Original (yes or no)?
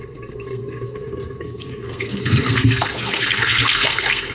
no